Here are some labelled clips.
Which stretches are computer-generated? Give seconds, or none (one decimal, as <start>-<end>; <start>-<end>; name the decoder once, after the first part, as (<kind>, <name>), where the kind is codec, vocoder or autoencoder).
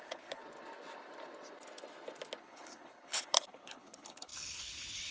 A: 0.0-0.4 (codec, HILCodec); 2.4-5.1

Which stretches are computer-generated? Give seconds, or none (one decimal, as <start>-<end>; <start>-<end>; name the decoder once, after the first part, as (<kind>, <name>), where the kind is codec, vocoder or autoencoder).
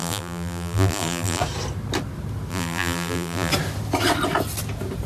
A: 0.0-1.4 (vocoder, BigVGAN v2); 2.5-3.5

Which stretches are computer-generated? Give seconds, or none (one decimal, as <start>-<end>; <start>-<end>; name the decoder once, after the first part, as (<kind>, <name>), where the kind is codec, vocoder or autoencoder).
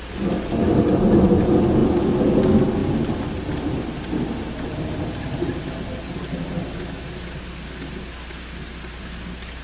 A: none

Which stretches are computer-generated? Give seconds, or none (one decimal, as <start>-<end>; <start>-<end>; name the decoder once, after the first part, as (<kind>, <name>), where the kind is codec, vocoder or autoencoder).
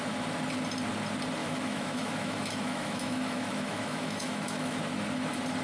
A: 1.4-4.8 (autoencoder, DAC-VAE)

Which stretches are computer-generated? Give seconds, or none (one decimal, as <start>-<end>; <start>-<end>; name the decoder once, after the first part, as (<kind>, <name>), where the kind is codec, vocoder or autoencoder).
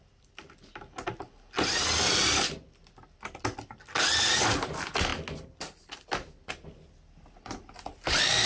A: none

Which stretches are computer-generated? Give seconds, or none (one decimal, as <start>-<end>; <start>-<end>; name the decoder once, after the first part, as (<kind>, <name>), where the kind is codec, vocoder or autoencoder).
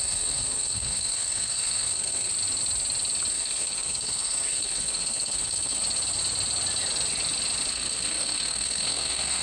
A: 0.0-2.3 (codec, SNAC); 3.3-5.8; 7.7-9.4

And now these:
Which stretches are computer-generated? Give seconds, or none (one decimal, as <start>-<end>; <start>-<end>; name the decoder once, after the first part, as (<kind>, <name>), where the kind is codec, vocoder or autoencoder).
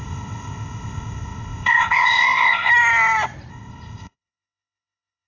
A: 0.0-2.7 (codec, ZipCodec); 3.5-5.3